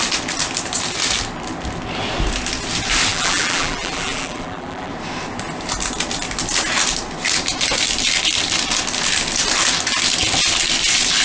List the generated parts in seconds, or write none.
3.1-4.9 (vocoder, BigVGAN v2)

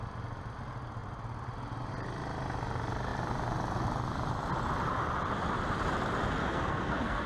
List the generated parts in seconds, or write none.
6.4-7.3 (codec, SNAC)